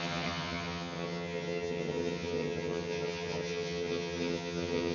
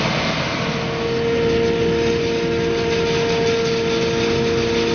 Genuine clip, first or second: second